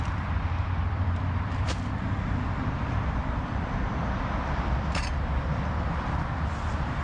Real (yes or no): no